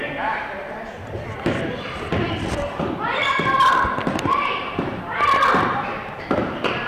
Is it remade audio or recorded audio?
remade